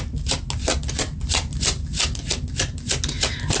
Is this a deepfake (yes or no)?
no